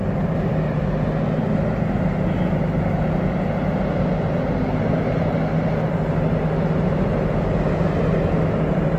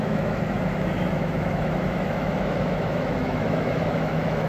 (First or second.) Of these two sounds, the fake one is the second